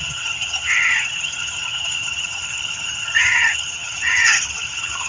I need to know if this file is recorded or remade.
remade